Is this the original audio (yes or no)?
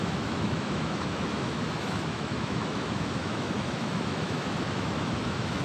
no